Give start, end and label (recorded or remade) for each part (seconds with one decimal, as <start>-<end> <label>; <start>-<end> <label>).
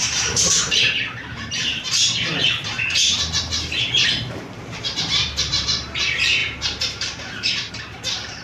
0.0-8.4 remade